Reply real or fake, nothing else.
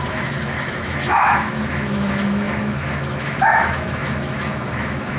fake